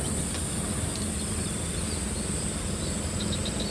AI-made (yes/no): no